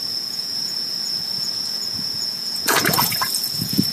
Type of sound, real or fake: fake